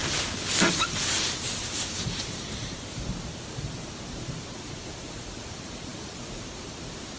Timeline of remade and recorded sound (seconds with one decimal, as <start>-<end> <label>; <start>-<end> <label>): 0.0-1.8 recorded; 1.8-7.2 remade